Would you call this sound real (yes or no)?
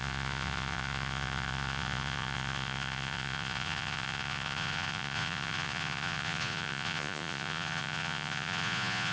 no